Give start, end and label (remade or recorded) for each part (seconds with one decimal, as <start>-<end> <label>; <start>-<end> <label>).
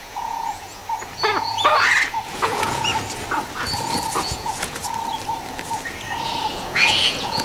0.0-0.8 remade; 0.8-2.3 recorded; 2.3-2.9 remade; 2.9-4.2 recorded; 4.2-4.8 remade; 4.8-6.5 recorded; 6.5-7.4 remade